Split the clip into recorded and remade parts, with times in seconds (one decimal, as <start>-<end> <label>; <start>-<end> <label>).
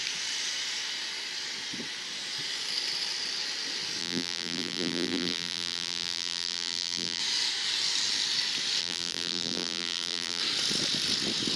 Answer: 0.0-4.0 recorded; 4.0-7.2 remade; 7.2-8.8 recorded; 8.8-10.4 remade; 10.4-11.6 recorded